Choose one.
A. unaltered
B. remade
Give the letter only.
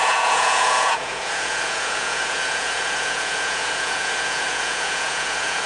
B